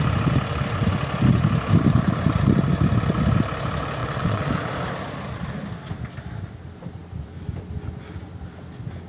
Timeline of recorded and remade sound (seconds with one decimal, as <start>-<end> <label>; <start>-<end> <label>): 0.0-4.0 recorded; 4.0-4.5 remade; 4.5-9.1 recorded